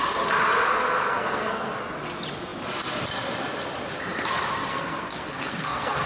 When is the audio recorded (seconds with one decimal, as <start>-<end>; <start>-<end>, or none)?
0.0-0.7; 1.8-4.7